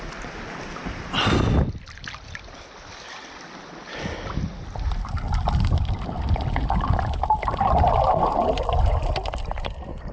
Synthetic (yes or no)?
no